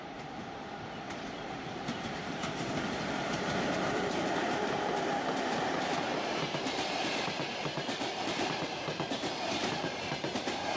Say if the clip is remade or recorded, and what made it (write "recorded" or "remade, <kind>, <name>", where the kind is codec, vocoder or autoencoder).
remade, vocoder, BigVGAN v2